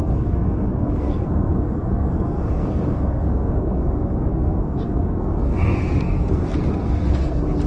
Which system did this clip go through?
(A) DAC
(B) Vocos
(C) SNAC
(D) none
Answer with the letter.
C